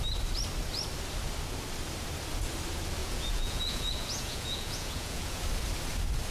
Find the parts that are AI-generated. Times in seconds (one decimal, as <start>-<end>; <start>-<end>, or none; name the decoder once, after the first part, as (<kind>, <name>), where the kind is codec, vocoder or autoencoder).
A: 3.0-5.4 (vocoder, Vocos)